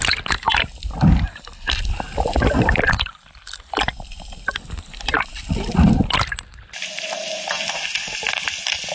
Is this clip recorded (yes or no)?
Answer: yes